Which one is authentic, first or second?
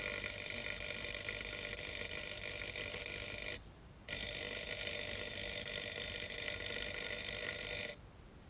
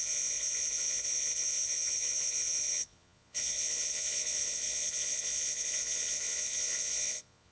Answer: first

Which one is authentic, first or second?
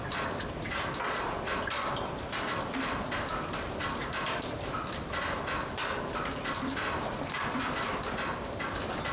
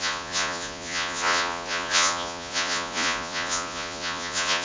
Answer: first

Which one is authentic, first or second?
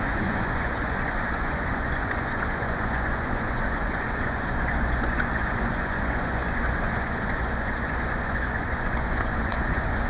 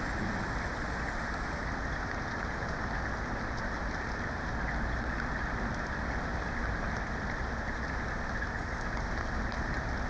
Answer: second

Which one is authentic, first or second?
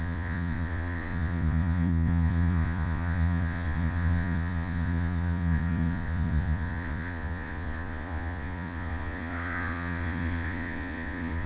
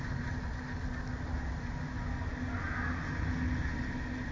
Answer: second